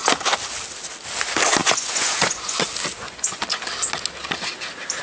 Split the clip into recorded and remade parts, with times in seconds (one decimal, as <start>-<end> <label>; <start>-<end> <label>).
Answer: 0.0-1.6 recorded; 1.6-2.6 remade; 2.6-3.0 recorded; 3.0-3.6 remade; 3.6-5.0 recorded